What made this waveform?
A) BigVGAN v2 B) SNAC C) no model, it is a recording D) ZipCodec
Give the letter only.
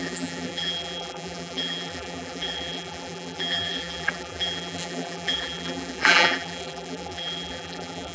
A